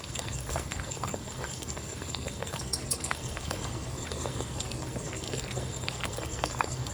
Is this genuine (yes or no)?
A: no